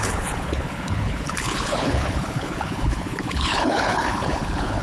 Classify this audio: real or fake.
fake